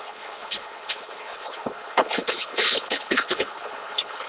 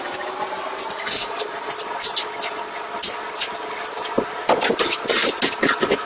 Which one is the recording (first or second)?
second